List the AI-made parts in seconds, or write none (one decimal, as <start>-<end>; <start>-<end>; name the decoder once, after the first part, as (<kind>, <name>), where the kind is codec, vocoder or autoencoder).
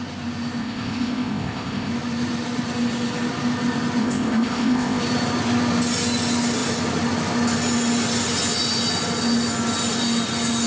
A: 0.6-1.9 (codec, ZipCodec); 4.0-5.0